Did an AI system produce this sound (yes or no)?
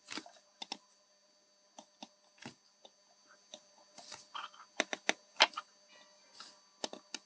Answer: no